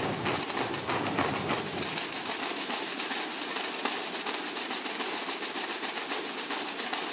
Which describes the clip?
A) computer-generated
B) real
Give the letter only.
B